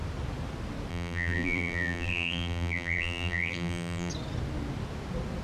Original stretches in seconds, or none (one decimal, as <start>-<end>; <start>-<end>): 0.0-0.9; 4.1-5.4